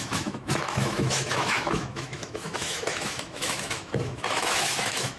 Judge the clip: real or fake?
fake